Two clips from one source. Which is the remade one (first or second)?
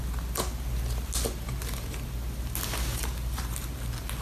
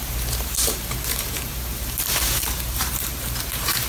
second